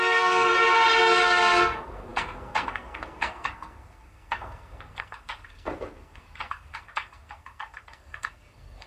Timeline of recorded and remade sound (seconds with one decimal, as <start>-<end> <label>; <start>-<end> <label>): 0.0-0.5 remade; 0.5-1.0 recorded; 1.0-8.9 remade